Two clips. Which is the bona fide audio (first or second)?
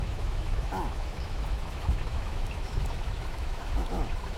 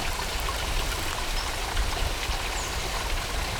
second